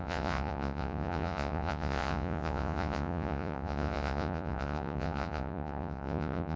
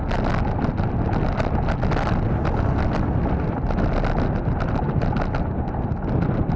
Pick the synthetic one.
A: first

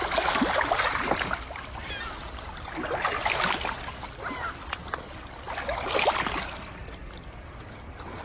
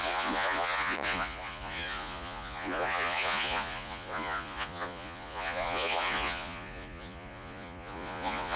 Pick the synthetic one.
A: second